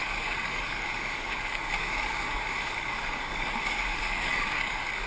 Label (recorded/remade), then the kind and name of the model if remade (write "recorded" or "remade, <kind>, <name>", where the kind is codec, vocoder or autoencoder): remade, codec, DAC